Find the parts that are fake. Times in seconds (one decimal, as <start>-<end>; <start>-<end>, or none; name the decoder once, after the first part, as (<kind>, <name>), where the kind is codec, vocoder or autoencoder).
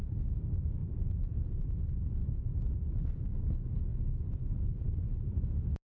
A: 0.8-1.7 (vocoder, BigVGAN v2); 2.2-2.9; 3.9-5.4